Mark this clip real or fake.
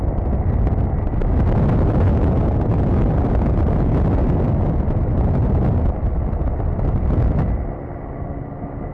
real